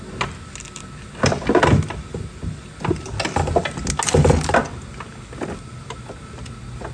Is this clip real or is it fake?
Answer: real